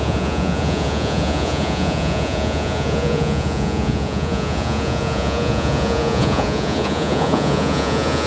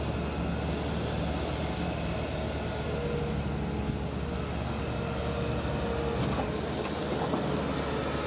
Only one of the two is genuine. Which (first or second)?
second